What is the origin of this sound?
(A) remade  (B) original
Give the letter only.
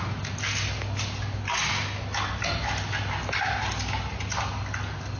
B